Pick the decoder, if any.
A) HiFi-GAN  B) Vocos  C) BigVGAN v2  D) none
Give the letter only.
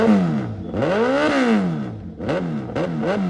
D